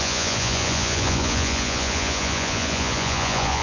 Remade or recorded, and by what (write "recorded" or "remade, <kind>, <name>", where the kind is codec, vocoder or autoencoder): remade, vocoder, Vocos